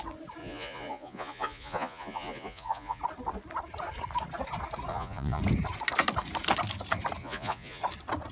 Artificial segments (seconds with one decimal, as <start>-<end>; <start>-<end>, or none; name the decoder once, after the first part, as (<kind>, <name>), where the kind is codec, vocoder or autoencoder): 0.4-3.0 (vocoder, Vocos); 4.9-5.4; 7.2-7.8